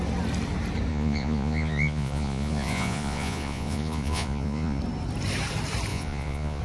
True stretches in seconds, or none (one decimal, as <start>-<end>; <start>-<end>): 0.0-0.9; 4.8-5.9